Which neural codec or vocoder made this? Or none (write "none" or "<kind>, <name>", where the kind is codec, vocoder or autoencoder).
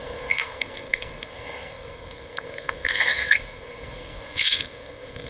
codec, SNAC